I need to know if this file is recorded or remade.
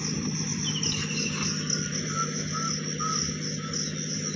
recorded